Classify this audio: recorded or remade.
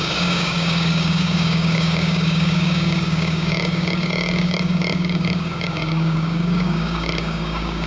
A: remade